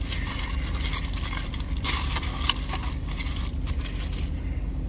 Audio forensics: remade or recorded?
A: remade